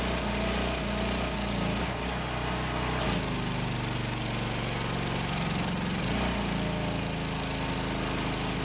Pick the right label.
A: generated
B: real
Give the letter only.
B